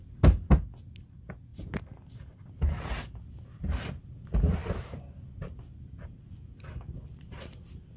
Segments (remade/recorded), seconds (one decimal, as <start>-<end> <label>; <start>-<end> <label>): 0.0-8.0 recorded